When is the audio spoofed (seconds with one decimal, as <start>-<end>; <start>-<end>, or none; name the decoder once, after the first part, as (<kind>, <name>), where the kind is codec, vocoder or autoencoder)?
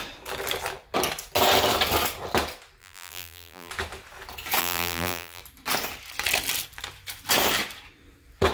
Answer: 2.8-3.7 (vocoder, BigVGAN v2); 4.6-5.4